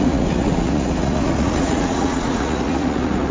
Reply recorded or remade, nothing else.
remade